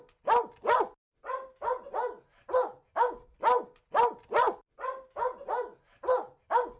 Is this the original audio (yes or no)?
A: yes